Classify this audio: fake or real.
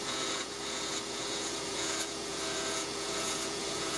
fake